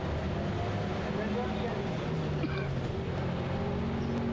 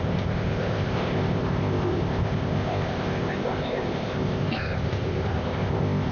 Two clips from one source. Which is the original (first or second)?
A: first